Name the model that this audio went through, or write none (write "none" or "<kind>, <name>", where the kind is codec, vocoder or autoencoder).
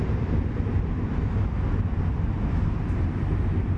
none